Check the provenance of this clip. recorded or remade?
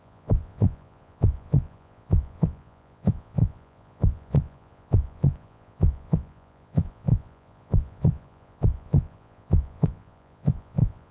remade